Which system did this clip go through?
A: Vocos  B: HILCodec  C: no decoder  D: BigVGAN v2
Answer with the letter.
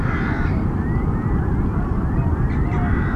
C